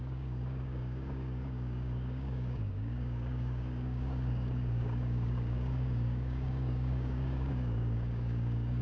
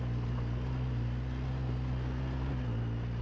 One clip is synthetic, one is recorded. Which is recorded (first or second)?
second